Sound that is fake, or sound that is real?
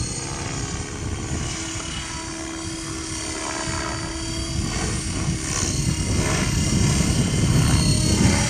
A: real